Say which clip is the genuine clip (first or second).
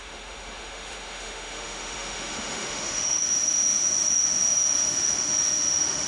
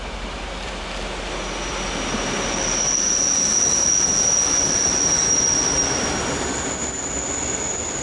second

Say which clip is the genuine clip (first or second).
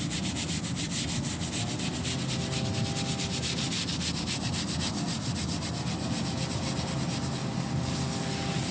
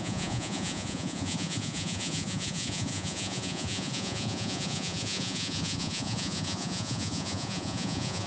first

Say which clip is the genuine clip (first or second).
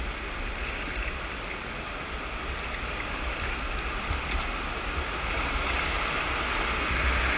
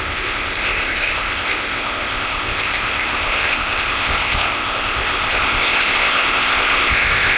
first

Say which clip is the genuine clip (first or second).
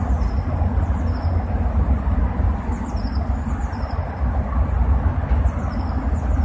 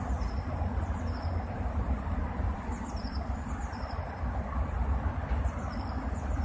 first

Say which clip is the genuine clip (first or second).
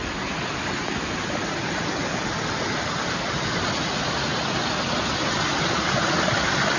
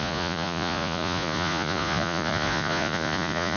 first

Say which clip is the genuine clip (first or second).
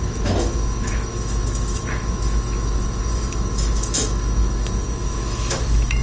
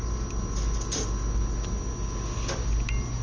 second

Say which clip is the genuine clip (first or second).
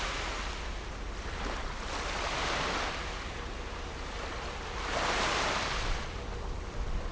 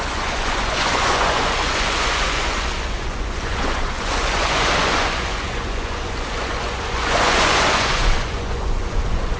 first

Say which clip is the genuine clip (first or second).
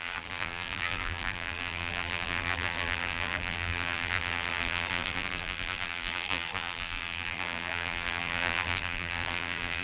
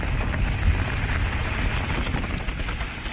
second